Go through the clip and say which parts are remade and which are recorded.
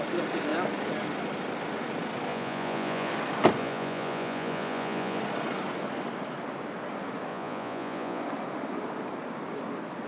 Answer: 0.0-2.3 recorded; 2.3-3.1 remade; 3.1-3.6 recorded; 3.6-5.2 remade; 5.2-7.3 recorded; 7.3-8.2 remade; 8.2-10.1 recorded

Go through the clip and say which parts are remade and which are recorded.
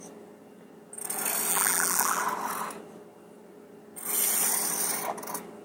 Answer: 0.0-1.5 recorded; 1.5-2.2 remade; 2.2-5.6 recorded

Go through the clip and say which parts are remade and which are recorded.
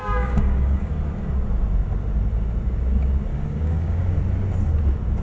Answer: 0.0-0.9 remade; 0.9-3.3 recorded; 3.3-4.2 remade; 4.2-5.2 recorded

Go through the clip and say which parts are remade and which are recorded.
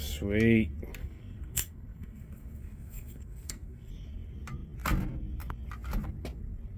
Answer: 0.0-1.0 recorded; 1.0-3.9 remade; 3.9-6.8 recorded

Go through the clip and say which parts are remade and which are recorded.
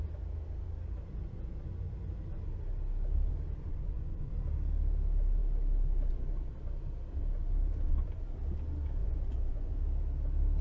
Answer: 0.0-3.7 recorded; 3.7-4.3 remade; 4.3-9.0 recorded; 9.0-9.7 remade; 9.7-10.6 recorded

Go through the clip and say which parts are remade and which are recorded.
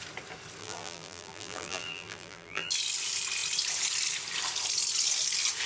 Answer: 0.0-0.6 recorded; 0.6-2.7 remade; 2.7-5.7 recorded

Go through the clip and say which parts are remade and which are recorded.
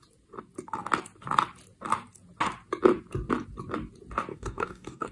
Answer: 0.0-4.3 recorded; 4.3-5.1 remade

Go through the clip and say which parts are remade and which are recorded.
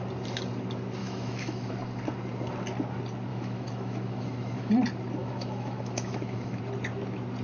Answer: 0.0-1.0 recorded; 1.0-1.7 remade; 1.7-3.3 recorded; 3.3-4.7 remade; 4.7-5.2 recorded; 5.2-6.6 remade; 6.6-7.4 recorded